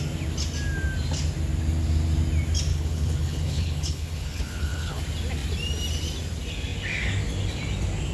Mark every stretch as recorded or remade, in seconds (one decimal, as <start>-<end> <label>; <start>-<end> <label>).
0.0-2.7 recorded; 2.7-5.0 remade; 5.0-8.1 recorded